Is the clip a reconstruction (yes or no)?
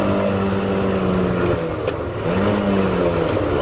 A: no